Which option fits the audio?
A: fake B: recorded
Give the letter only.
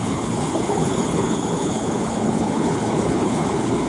A